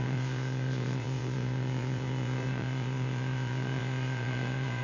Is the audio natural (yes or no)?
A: no